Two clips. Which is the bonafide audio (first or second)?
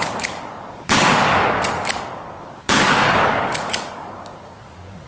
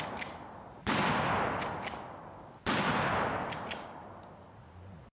second